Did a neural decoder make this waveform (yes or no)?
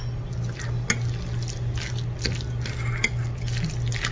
no